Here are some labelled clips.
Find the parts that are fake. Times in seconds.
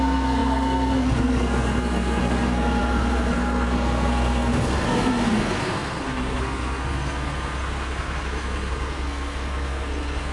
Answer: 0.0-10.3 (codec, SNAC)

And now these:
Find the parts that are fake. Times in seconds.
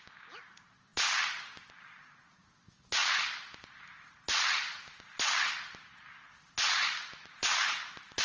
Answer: none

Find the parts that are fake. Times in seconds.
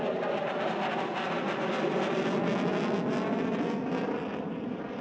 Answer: none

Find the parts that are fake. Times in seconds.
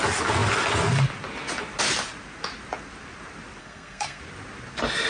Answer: 3.6-4.2 (codec, SNAC)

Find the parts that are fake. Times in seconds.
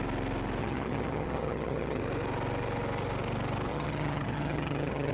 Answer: 0.6-2.0 (vocoder, HiFi-GAN); 3.7-5.1